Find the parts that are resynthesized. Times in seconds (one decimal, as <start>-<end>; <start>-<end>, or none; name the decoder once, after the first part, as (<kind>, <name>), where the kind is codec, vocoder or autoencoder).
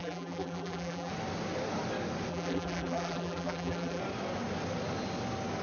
0.0-1.1 (vocoder, BigVGAN v2); 2.3-4.0